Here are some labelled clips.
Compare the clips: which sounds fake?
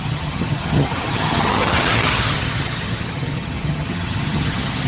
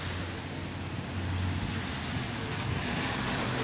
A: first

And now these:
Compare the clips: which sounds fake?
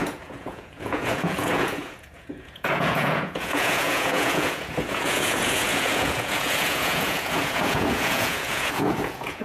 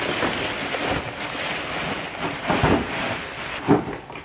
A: first